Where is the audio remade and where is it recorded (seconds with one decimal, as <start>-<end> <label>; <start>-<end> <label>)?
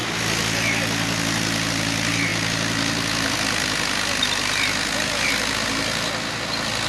0.0-6.9 recorded